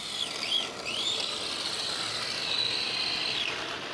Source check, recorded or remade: recorded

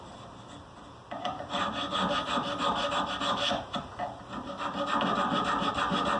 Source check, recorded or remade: recorded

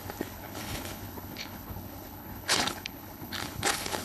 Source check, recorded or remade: remade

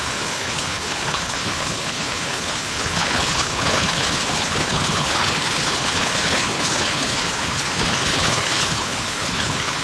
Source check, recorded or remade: remade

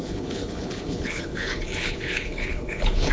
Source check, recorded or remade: remade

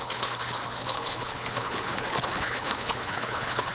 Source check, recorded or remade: remade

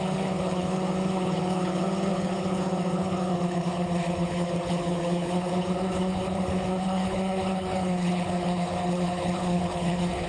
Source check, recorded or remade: remade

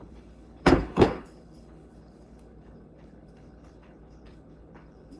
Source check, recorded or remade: remade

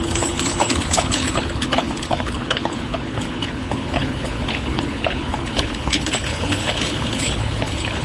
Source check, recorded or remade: remade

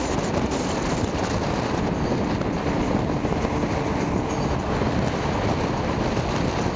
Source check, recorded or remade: recorded